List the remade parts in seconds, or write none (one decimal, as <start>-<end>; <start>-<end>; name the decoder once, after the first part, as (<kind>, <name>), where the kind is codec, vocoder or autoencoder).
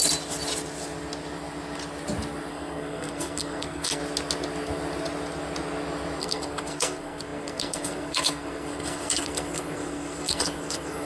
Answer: 2.5-4.0 (codec, SNAC); 6.2-11.0